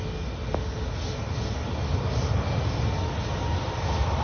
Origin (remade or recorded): recorded